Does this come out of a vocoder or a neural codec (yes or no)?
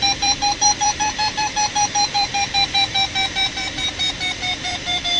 yes